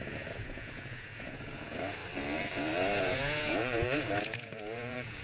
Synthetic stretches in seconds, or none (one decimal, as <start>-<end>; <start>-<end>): 0.0-2.0; 3.0-5.2